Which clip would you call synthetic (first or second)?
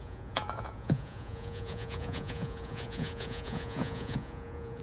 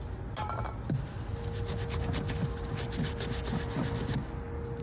first